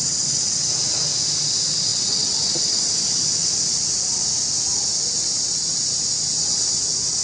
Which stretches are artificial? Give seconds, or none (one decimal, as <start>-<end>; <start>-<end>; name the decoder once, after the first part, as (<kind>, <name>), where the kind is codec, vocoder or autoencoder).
1.9-2.8 (vocoder, WaveNeXt)